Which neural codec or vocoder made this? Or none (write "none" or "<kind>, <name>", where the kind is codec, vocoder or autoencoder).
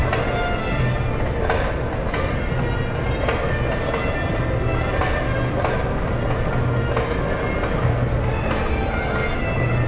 none